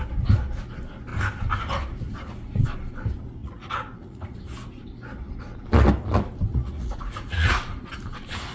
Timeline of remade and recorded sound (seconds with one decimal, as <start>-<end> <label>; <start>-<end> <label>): 0.0-3.4 recorded; 3.4-4.4 remade; 4.4-6.5 recorded; 6.5-7.6 remade; 7.6-8.5 recorded